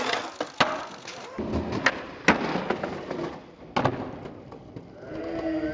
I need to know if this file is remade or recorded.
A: recorded